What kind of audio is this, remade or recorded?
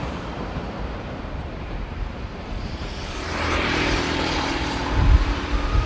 remade